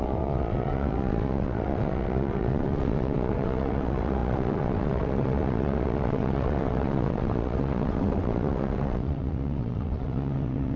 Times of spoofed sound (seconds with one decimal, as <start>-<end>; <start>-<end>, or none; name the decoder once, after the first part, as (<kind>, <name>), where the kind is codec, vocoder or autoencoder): 0.0-10.8 (vocoder, WaveNeXt)